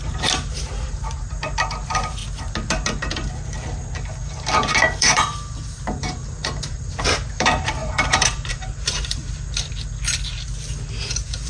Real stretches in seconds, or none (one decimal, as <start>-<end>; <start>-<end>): 2.2-5.0; 9.2-11.0